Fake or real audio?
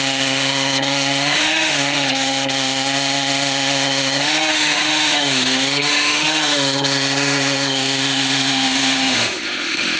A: fake